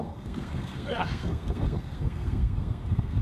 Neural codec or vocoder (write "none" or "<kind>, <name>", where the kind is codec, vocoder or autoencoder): codec, SNAC